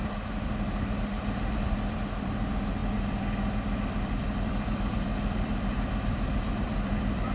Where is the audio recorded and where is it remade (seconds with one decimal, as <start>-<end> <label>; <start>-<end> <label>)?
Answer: 0.0-7.3 remade